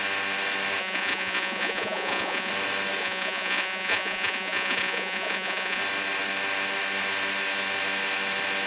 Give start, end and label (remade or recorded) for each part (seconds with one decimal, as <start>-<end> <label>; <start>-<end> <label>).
0.0-0.8 recorded; 0.8-2.5 remade; 2.5-3.0 recorded; 3.0-5.8 remade; 5.8-8.7 recorded